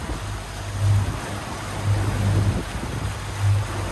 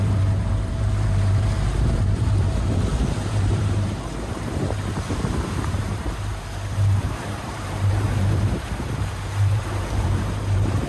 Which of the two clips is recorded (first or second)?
first